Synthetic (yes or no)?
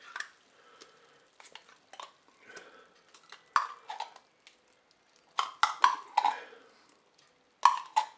no